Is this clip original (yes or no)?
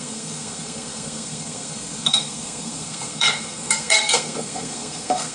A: no